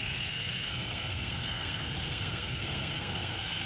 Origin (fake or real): fake